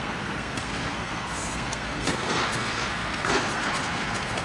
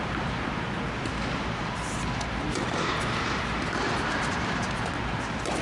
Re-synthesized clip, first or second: first